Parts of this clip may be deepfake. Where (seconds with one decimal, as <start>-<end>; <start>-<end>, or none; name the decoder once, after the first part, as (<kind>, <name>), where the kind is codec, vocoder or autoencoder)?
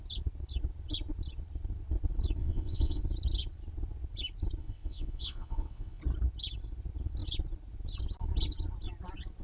2.4-3.0 (vocoder, WaveNeXt); 4.6-6.0